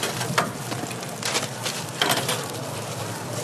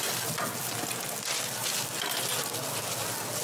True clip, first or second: second